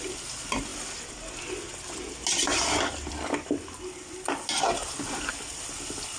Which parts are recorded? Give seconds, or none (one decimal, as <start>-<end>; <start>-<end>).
0.0-6.2